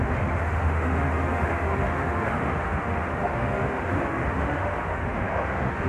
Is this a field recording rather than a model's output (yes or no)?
no